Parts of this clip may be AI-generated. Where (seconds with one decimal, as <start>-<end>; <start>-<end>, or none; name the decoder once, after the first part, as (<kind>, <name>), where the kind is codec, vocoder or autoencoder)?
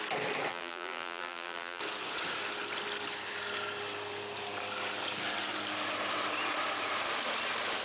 0.5-1.8 (vocoder, BigVGAN v2)